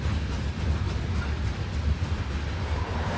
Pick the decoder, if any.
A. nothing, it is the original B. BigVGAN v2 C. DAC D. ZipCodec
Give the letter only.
A